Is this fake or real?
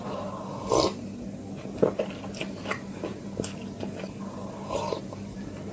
real